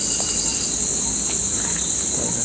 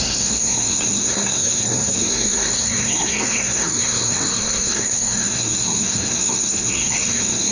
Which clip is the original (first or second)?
first